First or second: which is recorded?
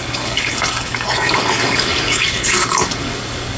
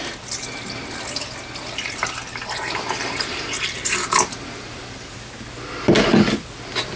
second